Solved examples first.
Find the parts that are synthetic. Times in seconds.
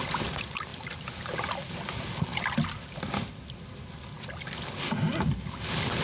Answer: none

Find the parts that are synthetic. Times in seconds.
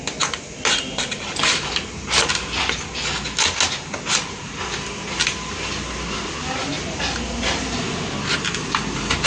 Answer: none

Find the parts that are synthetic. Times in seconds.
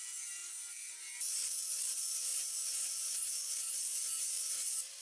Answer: 0.0-5.0 (vocoder, BigVGAN v2)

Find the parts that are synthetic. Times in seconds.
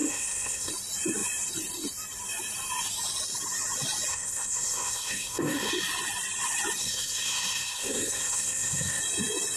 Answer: 0.0-0.7 (codec, SNAC); 4.1-5.7; 6.8-9.0